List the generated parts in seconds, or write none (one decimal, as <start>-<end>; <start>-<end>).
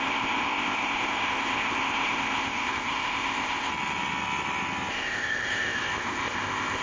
0.0-3.7; 4.9-6.8